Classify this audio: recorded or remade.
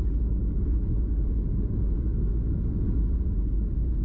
recorded